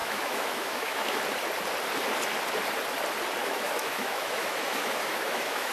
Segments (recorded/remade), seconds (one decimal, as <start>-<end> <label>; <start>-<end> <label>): 0.0-1.2 remade; 1.2-3.4 recorded; 3.4-5.7 remade